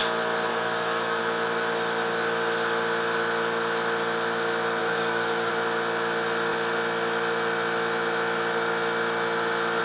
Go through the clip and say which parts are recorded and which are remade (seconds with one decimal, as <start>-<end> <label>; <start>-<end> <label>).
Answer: 0.0-0.5 recorded; 0.5-1.2 remade; 1.2-4.8 recorded; 4.8-5.5 remade; 5.5-9.8 recorded